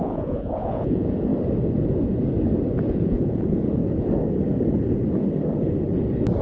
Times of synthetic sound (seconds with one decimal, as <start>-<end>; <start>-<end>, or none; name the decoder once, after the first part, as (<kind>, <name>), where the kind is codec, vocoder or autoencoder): 0.0-1.3 (vocoder, Vocos); 2.9-3.8